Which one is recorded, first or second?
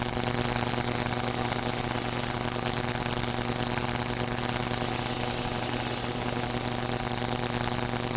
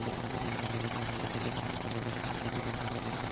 first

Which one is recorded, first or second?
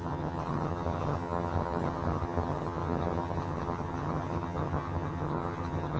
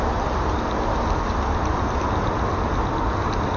second